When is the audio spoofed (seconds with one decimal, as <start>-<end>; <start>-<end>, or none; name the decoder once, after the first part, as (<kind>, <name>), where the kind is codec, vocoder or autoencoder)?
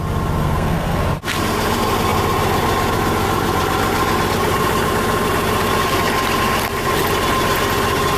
0.4-1.0 (codec, SNAC)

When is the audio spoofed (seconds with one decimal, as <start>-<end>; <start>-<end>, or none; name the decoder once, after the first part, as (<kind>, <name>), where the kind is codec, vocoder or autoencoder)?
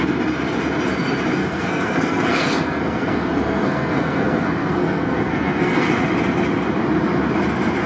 1.4-5.9 (codec, SNAC)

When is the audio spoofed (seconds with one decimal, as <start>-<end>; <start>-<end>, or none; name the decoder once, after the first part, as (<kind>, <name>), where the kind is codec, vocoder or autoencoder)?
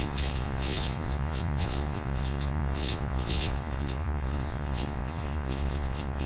0.0-6.3 (vocoder, Vocos)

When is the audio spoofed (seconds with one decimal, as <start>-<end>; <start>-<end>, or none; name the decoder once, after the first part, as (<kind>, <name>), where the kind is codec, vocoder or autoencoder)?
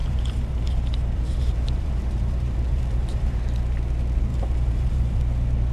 0.0-3.4 (vocoder, BigVGAN v2); 4.3-5.2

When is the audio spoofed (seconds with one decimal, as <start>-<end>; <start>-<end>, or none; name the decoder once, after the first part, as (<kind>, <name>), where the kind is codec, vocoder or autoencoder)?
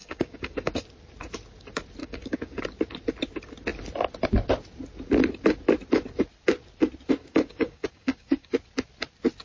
0.0-0.8 (codec, DAC); 2.0-2.6; 7.2-8.5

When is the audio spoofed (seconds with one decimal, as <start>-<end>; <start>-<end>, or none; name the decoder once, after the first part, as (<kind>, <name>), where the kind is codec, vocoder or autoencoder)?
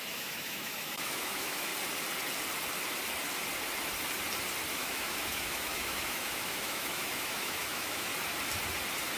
0.0-1.7 (autoencoder, DAC-VAE); 4.7-8.1